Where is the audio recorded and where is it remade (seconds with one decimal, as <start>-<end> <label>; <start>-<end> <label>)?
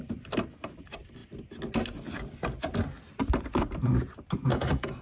0.0-4.5 recorded; 4.5-5.0 remade